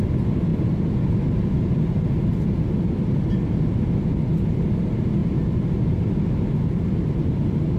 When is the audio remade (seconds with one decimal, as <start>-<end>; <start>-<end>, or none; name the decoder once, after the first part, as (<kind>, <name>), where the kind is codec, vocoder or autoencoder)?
0.0-0.5 (vocoder, BigVGAN v2); 1.4-7.8